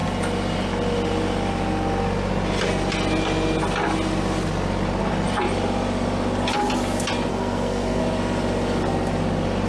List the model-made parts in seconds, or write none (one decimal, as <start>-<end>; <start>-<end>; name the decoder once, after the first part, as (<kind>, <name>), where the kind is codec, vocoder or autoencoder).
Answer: 7.3-8.0 (codec, SNAC)